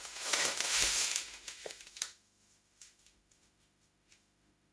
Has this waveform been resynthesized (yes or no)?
yes